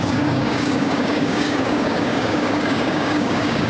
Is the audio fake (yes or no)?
yes